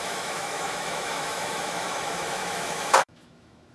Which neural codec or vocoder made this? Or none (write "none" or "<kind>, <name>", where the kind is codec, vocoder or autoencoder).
autoencoder, DAC-VAE